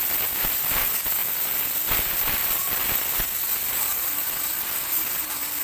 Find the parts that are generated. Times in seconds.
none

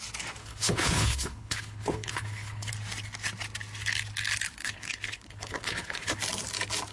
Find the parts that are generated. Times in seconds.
0.4-2.7 (codec, HILCodec); 4.6-6.2

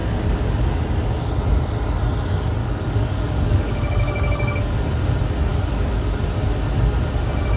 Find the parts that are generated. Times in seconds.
0.0-0.8 (codec, DAC); 2.6-4.8; 5.5-6.2

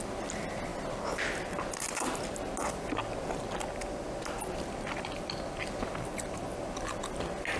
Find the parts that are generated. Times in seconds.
none

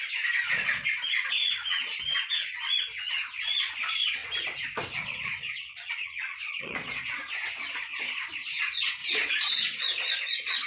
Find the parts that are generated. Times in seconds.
0.0-2.4 (vocoder, Vocos); 3.1-4.2; 4.9-7.2; 7.8-10.7

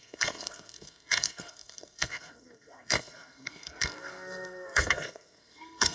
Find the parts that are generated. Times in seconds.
0.0-5.9 (codec, SNAC)

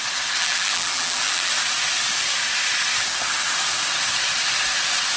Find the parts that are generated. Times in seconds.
0.4-1.5 (vocoder, BigVGAN v2)